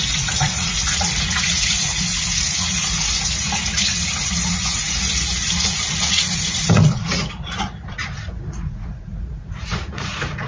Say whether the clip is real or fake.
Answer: fake